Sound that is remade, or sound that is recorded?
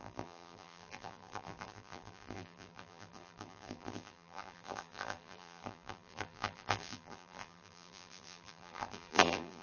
remade